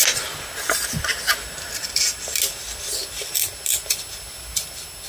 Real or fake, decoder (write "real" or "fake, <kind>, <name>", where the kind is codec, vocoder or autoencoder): real